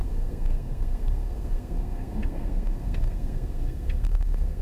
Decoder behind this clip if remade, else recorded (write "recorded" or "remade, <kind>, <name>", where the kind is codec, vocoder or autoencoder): remade, codec, SNAC